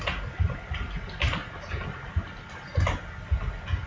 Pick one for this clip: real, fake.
real